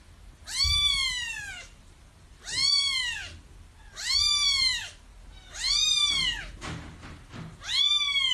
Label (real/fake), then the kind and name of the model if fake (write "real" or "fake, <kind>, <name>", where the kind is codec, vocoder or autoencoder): real